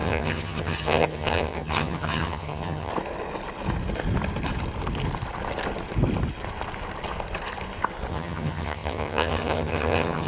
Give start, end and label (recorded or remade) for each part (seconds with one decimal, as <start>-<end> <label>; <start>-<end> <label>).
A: 0.0-2.9 remade; 2.9-8.1 recorded; 8.1-10.3 remade